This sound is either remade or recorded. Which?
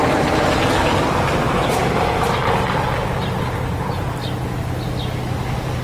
recorded